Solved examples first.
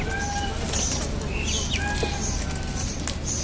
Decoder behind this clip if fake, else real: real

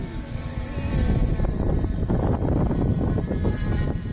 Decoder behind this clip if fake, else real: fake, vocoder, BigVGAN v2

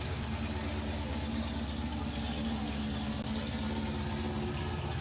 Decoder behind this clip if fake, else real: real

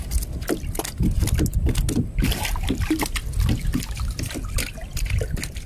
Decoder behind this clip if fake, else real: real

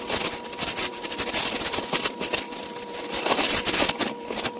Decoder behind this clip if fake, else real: fake, vocoder, BigVGAN v2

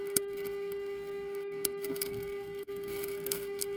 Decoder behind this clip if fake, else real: fake, codec, SNAC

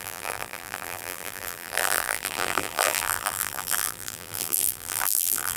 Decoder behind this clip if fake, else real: fake, vocoder, BigVGAN v2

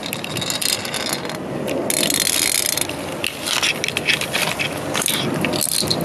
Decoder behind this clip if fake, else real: real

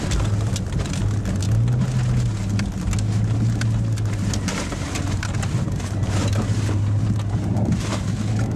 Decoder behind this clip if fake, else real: real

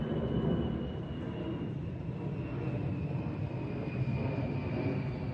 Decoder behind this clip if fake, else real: real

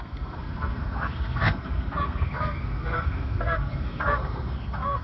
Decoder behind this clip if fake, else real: fake, codec, SNAC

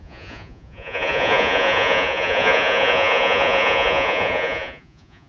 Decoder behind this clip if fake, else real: fake, vocoder, Vocos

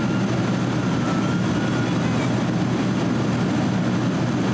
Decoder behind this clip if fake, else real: real